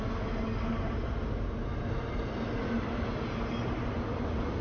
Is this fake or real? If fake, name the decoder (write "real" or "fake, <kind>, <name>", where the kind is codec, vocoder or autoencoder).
real